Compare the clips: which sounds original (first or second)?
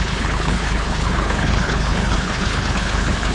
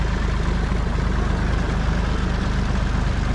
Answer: second